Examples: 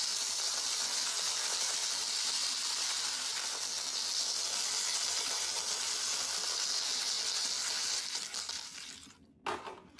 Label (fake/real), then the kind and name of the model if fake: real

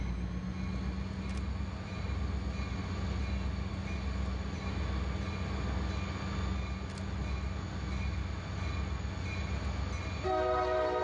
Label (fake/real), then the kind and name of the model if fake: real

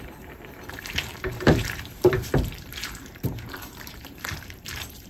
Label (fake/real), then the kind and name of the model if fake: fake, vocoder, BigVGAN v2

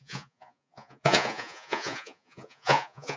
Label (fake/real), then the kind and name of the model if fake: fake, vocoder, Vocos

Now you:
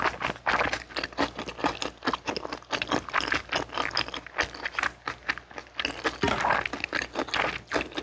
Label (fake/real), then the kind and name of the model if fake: real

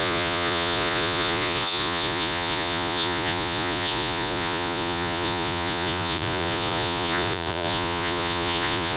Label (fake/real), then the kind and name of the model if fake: fake, vocoder, Vocos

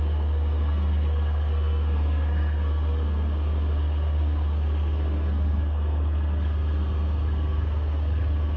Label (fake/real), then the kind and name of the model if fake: fake, codec, SNAC